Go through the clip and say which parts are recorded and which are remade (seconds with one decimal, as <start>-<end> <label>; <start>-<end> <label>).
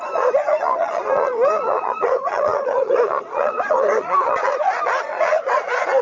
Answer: 0.0-6.0 remade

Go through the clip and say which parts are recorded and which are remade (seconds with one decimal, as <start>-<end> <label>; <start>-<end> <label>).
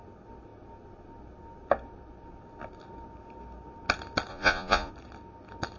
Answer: 0.0-4.3 recorded; 4.3-4.9 remade; 4.9-5.8 recorded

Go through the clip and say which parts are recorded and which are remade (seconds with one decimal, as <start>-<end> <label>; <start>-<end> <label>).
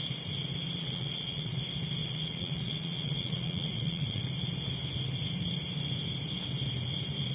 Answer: 0.0-0.8 recorded; 0.8-1.5 remade; 1.5-2.0 recorded; 2.0-4.2 remade; 4.2-7.3 recorded